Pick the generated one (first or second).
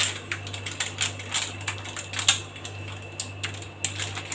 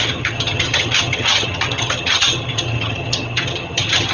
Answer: second